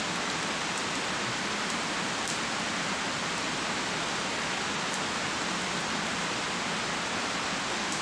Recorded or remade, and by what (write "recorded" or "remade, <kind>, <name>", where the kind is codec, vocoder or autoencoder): recorded